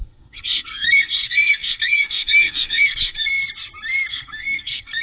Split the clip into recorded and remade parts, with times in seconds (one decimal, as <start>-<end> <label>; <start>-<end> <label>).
0.0-3.4 remade; 3.4-4.1 recorded; 4.1-5.0 remade